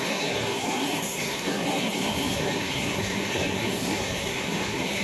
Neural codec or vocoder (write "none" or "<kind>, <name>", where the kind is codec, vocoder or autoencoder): codec, SNAC